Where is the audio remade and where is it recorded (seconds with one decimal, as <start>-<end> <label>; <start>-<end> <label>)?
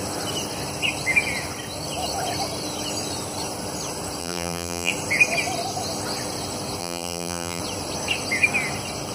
0.0-4.2 recorded; 4.2-4.9 remade; 4.9-6.8 recorded; 6.8-7.6 remade; 7.6-9.1 recorded